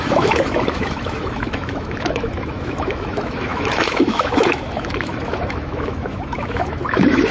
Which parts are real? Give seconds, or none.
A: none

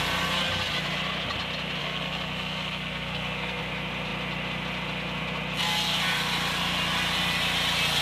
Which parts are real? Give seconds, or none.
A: 0.0-1.8; 3.6-8.0

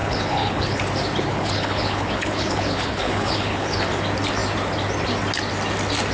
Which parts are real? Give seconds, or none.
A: 0.8-1.3; 3.9-6.1

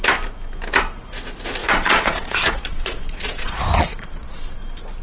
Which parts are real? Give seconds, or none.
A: 0.0-1.6; 4.6-5.0

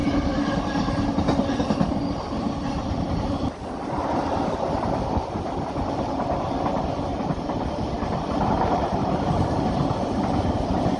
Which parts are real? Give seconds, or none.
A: 5.2-9.0; 9.6-11.0